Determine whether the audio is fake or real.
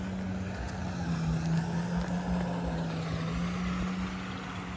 real